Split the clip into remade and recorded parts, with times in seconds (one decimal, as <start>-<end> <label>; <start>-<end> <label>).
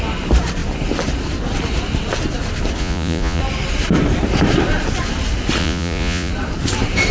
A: 0.0-2.8 recorded; 2.8-3.4 remade; 3.4-5.6 recorded; 5.6-6.3 remade; 6.3-7.1 recorded